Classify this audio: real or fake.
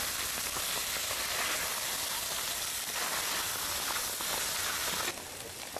real